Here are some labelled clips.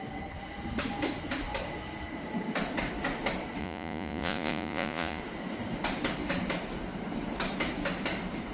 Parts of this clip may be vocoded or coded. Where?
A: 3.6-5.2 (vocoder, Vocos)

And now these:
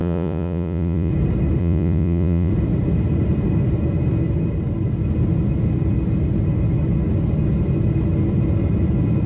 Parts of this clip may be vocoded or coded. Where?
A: 0.0-1.1 (vocoder, Vocos); 1.6-2.5

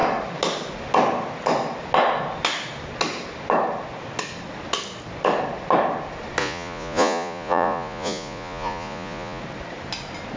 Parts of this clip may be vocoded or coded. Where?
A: 6.4-9.4 (vocoder, Vocos)

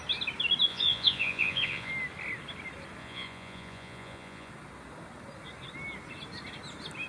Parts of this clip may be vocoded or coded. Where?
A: 0.7-1.9 (vocoder, Vocos); 3.0-4.5

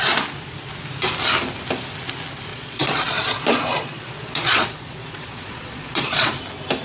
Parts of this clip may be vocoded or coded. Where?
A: 2.5-6.3 (vocoder, Vocos)

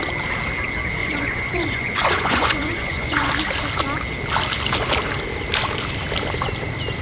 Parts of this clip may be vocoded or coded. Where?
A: 1.0-3.3 (vocoder, Vocos)

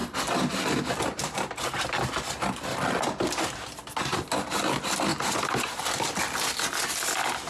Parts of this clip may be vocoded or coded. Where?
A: none